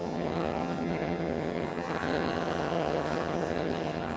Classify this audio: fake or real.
fake